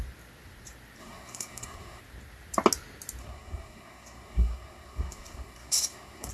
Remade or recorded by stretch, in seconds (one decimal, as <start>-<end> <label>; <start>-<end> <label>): 0.0-1.0 recorded; 1.0-2.0 remade; 2.0-3.2 recorded; 3.2-6.3 remade